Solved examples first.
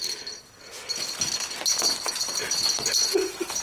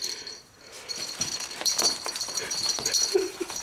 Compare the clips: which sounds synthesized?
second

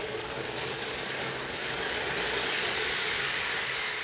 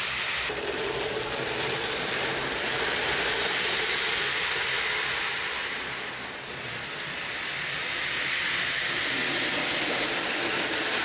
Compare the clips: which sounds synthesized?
first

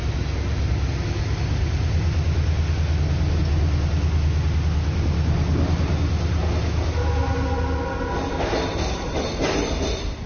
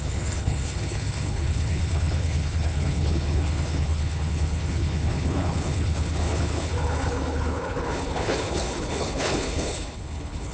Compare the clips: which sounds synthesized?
second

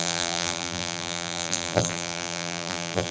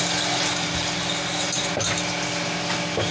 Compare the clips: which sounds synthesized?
first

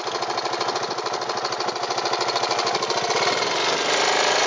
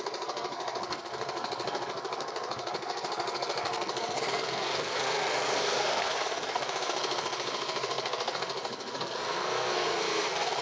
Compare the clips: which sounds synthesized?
second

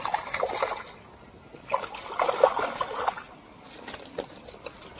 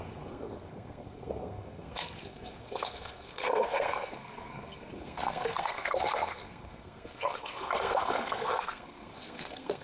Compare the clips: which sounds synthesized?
second